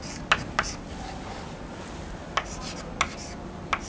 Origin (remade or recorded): recorded